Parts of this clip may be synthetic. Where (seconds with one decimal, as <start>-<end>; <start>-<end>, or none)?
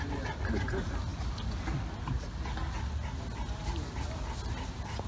none